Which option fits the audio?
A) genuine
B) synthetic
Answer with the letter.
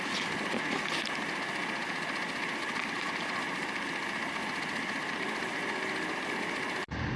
A